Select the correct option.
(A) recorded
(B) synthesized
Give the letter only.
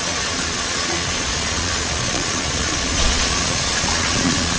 B